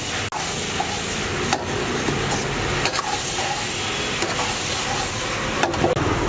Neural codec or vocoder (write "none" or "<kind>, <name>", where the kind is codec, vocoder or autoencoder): none